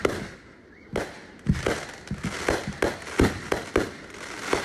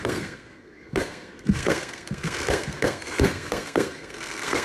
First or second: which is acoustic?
first